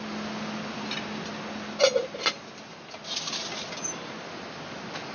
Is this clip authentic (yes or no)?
yes